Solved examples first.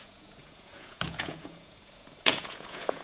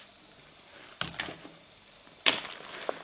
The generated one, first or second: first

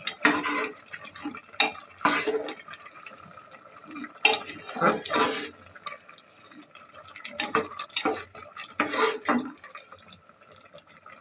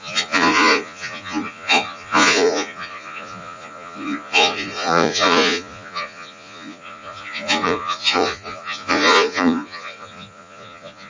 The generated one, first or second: second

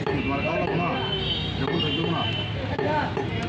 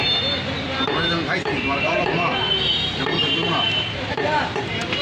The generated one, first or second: second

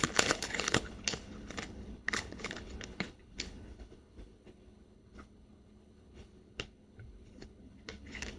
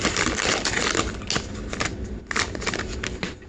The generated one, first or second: first